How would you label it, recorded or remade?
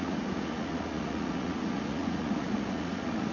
remade